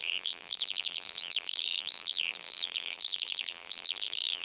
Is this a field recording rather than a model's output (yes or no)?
no